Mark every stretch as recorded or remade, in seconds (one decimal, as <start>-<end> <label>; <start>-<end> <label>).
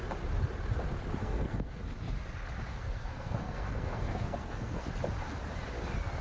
0.0-1.2 recorded; 1.2-1.8 remade; 1.8-2.7 recorded; 2.7-4.9 remade; 4.9-6.2 recorded